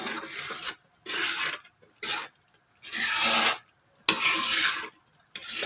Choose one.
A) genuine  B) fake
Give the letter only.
A